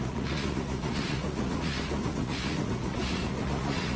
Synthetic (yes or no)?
yes